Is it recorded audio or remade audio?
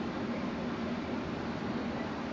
recorded